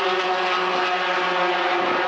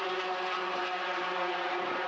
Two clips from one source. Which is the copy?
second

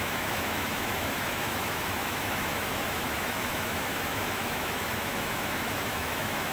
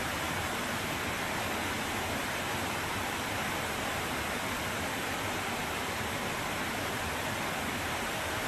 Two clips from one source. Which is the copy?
first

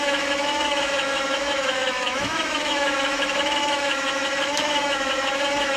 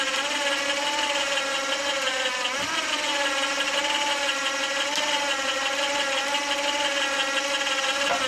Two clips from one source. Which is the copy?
first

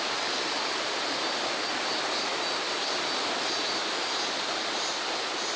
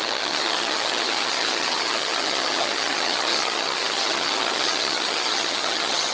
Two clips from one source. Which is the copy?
second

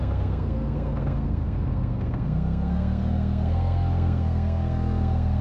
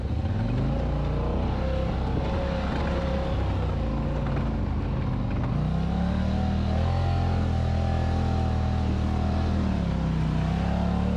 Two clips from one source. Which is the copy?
first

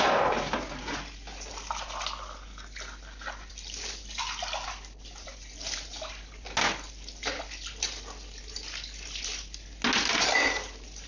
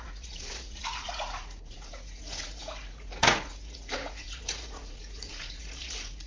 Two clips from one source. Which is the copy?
second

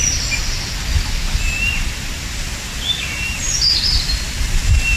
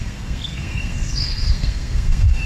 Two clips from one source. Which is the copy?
second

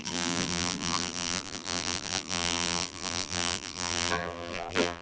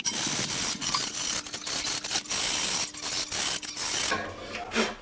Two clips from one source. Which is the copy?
first